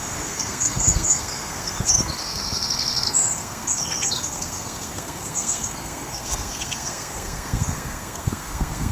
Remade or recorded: remade